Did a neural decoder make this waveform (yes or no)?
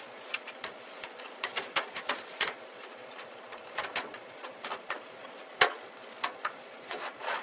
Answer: yes